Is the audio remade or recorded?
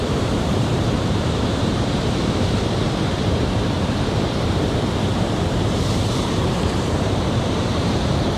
remade